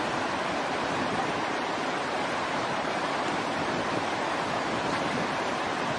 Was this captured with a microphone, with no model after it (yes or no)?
no